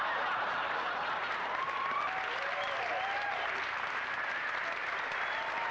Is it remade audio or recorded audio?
recorded